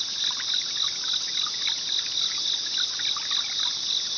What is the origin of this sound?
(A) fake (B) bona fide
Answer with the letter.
B